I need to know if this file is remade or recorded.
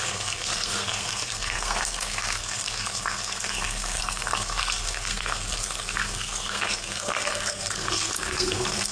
remade